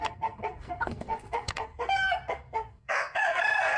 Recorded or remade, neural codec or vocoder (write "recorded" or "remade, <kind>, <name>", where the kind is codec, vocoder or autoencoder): remade, codec, SNAC